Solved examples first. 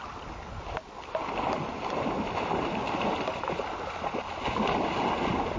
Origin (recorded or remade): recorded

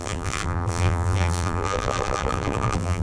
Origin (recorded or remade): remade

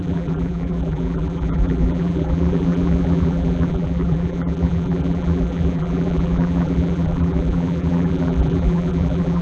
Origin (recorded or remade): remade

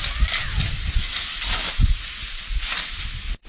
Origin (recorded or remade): recorded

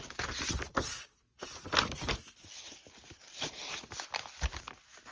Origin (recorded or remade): recorded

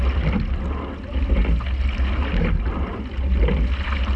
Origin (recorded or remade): recorded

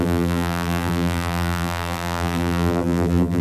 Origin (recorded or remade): remade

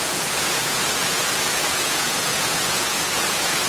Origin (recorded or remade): remade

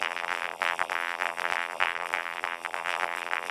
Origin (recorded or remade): remade